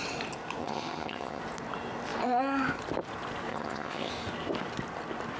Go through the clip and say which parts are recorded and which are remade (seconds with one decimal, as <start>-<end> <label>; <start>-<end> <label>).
0.0-0.6 recorded; 0.6-1.4 remade; 1.4-3.5 recorded; 3.5-4.1 remade; 4.1-5.4 recorded